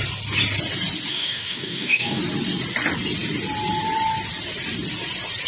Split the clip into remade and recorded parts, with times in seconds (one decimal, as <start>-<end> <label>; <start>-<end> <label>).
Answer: 0.0-1.1 recorded; 1.1-2.2 remade; 2.2-5.5 recorded